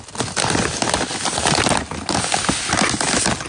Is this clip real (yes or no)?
yes